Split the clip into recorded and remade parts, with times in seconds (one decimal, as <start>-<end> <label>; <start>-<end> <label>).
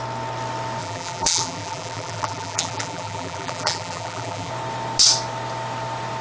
0.0-0.8 recorded; 0.8-4.5 remade; 4.5-6.2 recorded